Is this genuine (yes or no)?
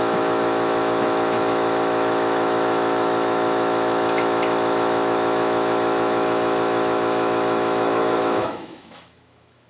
no